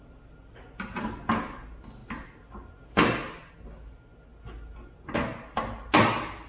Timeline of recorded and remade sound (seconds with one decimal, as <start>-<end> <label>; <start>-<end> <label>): 0.0-6.5 recorded